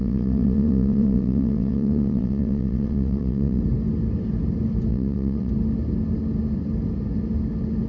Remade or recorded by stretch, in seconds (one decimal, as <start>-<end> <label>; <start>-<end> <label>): 0.0-3.6 remade; 3.6-4.9 recorded; 4.9-5.5 remade; 5.5-7.9 recorded